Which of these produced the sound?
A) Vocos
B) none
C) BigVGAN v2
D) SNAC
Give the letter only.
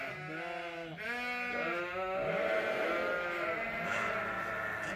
B